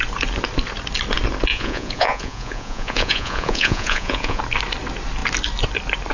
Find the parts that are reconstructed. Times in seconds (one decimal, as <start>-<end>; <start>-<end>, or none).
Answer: 1.5-4.4

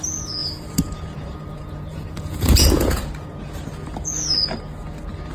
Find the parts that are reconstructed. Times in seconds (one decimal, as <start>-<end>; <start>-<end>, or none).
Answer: 0.4-3.6

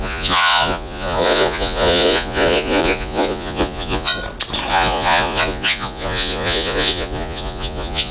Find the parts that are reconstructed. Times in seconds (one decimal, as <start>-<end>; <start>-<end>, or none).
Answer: 0.0-4.2; 4.7-8.1

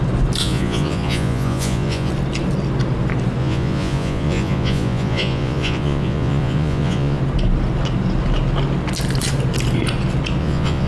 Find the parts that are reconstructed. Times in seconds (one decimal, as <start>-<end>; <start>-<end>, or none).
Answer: 0.4-2.1; 3.4-7.2; 10.4-10.9

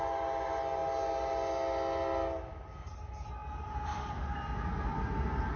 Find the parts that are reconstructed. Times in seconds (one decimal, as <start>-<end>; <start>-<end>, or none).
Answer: none

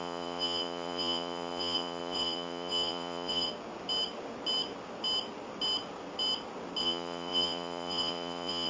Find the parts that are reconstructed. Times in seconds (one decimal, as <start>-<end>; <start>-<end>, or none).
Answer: 0.0-3.5; 6.8-8.7

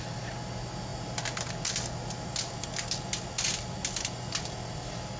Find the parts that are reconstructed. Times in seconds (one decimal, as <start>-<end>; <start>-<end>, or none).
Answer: none